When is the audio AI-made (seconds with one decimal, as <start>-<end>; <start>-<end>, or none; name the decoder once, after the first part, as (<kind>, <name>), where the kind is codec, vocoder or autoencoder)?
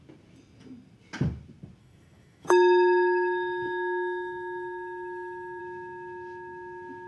1.8-5.6 (autoencoder, DAC-VAE)